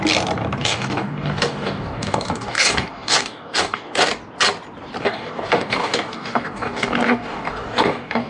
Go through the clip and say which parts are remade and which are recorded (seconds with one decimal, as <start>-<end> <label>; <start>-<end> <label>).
0.0-0.6 recorded; 0.6-4.1 remade; 4.1-5.0 recorded; 5.0-8.3 remade